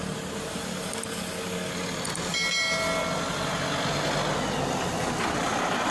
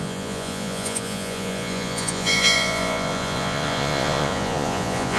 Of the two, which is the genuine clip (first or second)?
first